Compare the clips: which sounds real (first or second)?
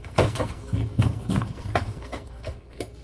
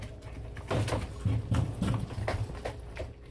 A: second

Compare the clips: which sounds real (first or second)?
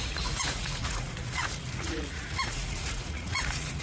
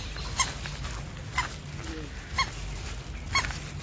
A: second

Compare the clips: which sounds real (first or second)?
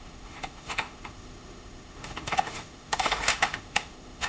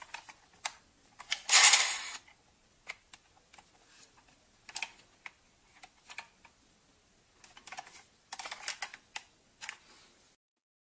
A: second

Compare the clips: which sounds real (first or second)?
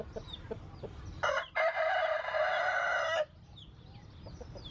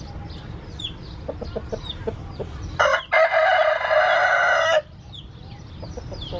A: second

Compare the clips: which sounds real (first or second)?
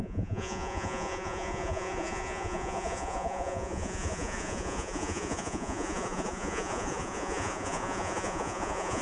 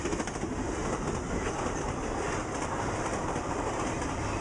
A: second